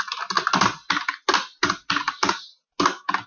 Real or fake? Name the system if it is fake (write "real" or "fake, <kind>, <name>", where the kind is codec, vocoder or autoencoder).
real